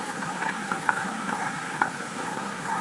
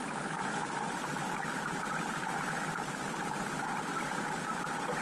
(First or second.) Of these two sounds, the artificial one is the first